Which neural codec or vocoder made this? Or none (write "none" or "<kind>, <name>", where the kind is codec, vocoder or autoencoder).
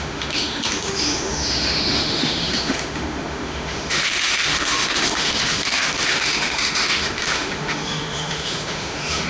autoencoder, DAC-VAE